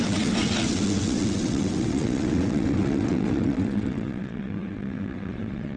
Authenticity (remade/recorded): remade